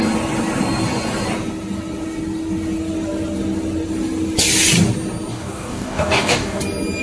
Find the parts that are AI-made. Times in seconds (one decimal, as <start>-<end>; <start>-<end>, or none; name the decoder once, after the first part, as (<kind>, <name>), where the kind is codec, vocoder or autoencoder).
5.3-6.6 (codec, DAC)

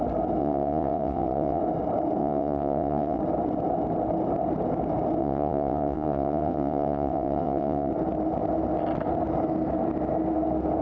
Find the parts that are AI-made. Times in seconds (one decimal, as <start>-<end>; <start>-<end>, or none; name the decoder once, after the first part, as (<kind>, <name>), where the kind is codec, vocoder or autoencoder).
0.4-1.6 (vocoder, WaveNeXt); 2.2-3.2; 5.2-7.9

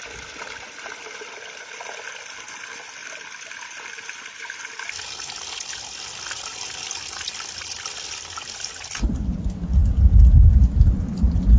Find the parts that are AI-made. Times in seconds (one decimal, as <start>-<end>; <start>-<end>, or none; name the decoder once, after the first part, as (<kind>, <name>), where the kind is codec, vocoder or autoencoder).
none